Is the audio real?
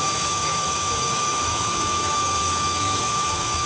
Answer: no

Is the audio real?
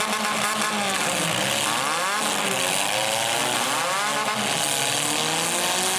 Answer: yes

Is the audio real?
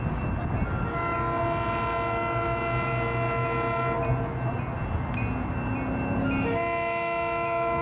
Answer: yes